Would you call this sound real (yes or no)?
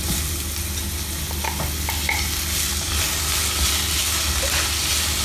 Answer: yes